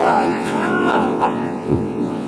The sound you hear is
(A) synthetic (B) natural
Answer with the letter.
A